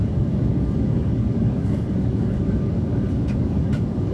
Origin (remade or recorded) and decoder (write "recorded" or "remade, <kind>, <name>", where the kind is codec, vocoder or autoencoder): remade, codec, DAC